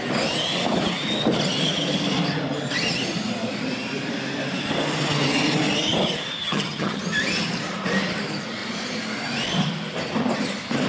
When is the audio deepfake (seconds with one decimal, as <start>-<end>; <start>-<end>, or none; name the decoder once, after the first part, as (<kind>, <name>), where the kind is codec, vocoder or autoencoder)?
6.4-7.0 (vocoder, HiFi-GAN)